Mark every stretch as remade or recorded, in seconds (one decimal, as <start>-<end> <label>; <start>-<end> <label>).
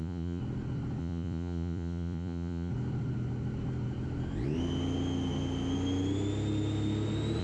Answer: 0.0-0.4 remade; 0.4-1.0 recorded; 1.0-2.7 remade; 2.7-7.4 recorded